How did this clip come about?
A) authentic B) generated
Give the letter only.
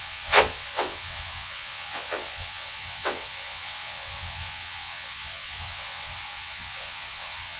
B